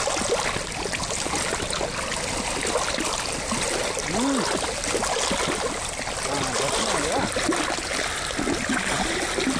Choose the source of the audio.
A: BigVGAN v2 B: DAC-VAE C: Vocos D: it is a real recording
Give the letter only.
D